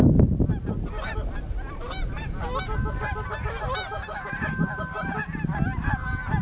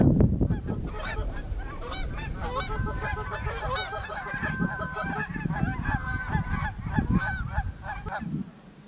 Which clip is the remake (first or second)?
second